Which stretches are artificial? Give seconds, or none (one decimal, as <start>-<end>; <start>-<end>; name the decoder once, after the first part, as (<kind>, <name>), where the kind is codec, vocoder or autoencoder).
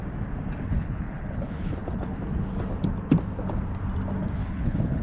0.7-2.1 (codec, HILCodec); 4.4-5.0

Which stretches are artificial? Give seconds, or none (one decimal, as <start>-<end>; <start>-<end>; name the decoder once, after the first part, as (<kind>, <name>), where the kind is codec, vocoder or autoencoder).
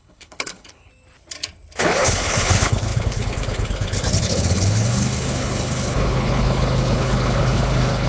0.0-0.9 (codec, HILCodec); 1.8-8.1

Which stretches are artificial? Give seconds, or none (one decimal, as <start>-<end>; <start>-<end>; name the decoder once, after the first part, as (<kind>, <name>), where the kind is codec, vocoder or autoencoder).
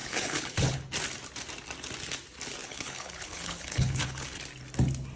0.0-0.8 (codec, HILCodec); 2.6-4.4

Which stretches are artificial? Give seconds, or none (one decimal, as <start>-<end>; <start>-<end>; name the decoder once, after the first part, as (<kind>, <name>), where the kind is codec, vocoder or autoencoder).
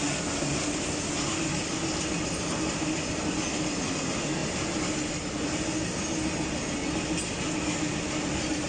none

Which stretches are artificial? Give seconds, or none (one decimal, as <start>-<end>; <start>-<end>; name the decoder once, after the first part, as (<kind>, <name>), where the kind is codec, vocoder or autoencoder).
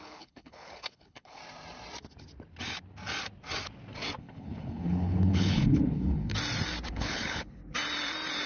0.0-1.4 (codec, HILCodec); 4.2-6.3; 6.9-7.6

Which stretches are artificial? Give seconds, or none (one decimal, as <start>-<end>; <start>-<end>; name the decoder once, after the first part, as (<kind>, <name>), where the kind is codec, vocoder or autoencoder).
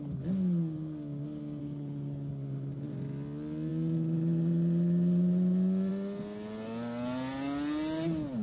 1.6-2.3 (codec, HILCodec)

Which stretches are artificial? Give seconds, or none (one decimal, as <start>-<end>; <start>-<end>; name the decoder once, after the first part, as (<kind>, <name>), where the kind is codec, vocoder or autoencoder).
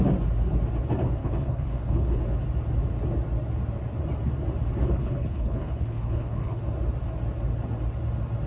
1.2-2.2 (codec, HILCodec); 4.8-6.6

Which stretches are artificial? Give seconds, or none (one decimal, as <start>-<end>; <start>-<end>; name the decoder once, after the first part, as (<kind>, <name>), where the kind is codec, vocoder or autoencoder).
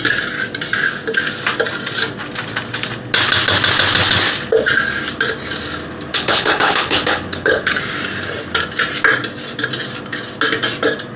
6.1-7.8 (codec, HILCodec)